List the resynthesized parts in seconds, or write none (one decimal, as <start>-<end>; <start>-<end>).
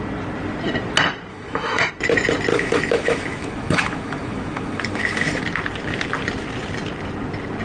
1.3-1.9; 2.5-5.4